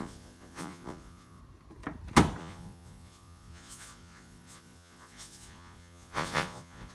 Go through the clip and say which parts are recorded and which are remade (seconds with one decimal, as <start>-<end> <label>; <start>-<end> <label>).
0.0-1.4 remade; 1.4-2.4 recorded; 2.4-6.9 remade